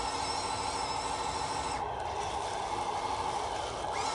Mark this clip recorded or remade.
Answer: recorded